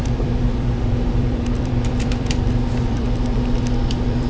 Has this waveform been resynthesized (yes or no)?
yes